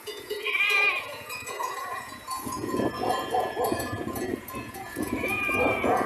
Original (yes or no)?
no